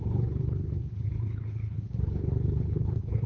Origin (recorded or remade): remade